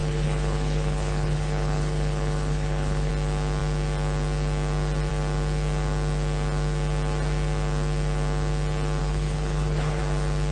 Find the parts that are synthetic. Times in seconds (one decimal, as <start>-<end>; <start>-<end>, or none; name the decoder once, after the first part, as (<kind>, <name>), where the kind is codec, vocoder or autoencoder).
0.0-3.1 (codec, HILCodec); 9.0-10.0